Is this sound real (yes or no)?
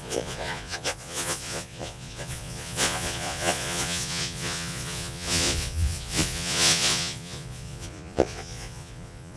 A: no